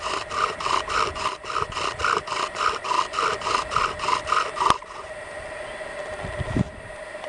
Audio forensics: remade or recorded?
remade